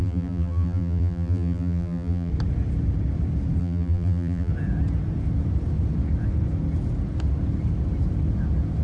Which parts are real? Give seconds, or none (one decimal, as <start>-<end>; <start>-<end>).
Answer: 2.3-3.6; 4.5-8.8